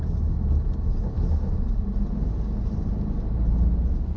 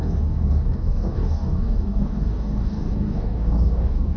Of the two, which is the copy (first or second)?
second